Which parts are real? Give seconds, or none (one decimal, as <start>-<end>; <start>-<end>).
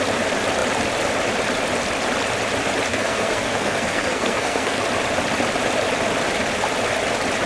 0.0-2.9; 4.8-7.5